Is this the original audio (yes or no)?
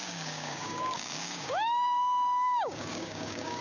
no